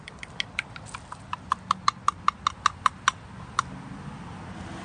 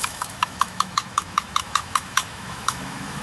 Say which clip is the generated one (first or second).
second